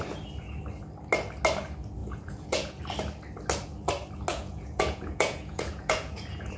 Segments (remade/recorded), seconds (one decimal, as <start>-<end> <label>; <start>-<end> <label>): 0.0-2.0 recorded; 2.0-2.8 remade; 2.8-4.3 recorded; 4.3-6.6 remade